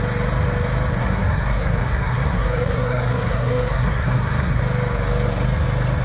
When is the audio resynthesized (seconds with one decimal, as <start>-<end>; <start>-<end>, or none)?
1.0-4.6

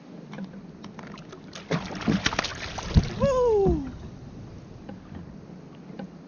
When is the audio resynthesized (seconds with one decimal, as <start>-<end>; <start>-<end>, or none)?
none

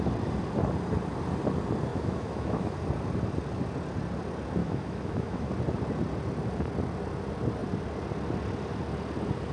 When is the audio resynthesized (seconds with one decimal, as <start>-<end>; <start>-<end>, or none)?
1.9-2.7; 4.6-5.5